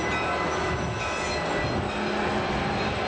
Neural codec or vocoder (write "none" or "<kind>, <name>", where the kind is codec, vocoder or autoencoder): none